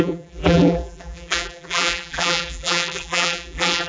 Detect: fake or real fake